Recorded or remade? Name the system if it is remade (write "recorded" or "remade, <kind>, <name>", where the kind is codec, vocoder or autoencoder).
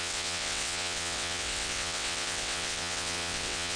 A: remade, vocoder, WaveNeXt